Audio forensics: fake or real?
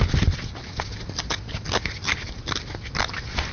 real